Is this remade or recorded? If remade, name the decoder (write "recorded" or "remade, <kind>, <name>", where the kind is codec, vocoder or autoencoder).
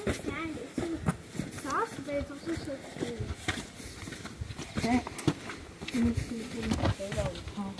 recorded